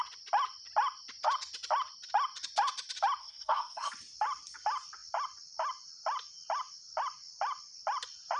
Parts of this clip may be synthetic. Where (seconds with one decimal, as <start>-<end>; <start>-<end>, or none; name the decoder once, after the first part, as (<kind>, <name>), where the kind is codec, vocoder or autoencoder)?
3.2-3.9 (codec, SNAC)